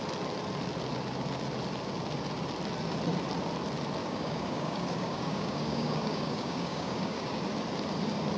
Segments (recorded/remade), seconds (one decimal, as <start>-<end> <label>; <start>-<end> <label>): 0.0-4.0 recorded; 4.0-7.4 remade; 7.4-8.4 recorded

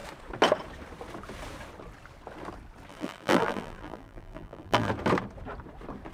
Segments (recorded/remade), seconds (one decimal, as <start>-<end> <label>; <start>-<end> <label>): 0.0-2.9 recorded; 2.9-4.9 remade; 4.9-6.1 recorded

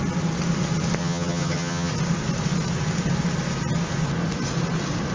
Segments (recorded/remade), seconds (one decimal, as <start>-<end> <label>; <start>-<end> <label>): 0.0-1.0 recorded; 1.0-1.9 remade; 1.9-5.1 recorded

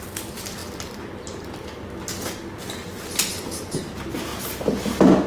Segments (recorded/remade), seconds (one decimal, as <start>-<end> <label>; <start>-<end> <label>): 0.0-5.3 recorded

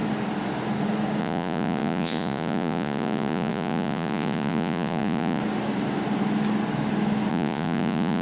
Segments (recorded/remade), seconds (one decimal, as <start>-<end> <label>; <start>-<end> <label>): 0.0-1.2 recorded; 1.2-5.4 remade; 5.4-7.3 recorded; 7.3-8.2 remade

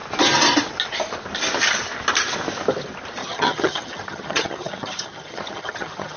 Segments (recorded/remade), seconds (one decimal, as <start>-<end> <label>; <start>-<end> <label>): 0.0-3.2 recorded; 3.2-6.2 remade